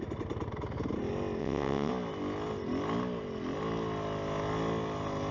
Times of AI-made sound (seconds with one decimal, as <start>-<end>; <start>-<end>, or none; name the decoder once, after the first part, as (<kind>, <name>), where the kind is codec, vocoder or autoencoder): 1.4-1.9 (vocoder, WaveNeXt)